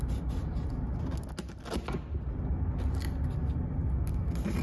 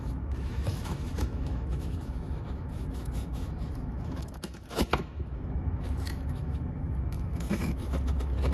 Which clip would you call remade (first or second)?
second